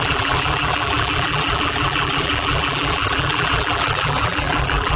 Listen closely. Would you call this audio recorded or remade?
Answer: remade